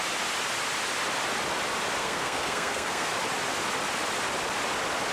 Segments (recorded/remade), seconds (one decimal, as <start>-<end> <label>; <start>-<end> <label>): 0.0-2.0 recorded; 2.0-3.1 remade; 3.1-5.1 recorded